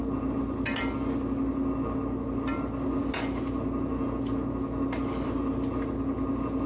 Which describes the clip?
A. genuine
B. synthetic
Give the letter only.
A